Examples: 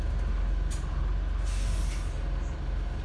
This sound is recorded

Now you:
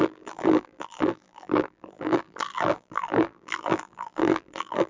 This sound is remade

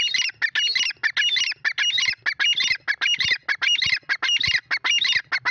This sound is recorded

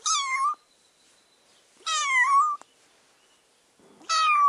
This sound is recorded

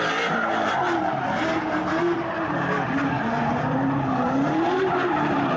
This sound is remade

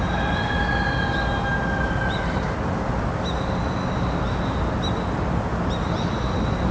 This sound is recorded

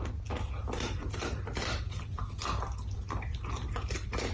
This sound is recorded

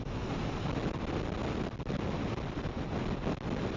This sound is recorded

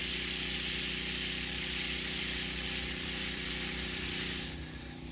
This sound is remade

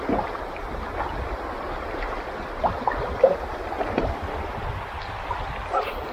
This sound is recorded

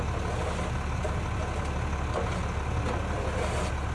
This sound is recorded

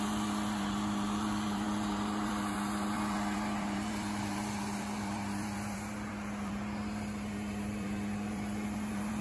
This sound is remade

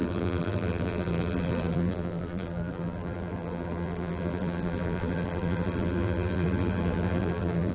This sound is remade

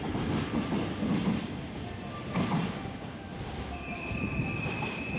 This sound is remade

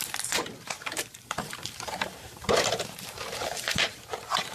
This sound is remade